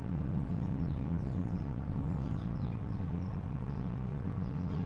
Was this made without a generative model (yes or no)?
no